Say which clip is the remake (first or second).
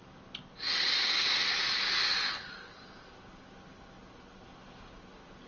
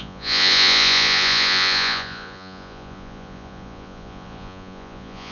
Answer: second